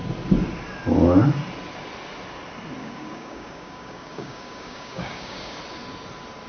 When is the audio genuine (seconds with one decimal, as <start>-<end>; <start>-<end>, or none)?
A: 0.0-2.8; 5.6-6.5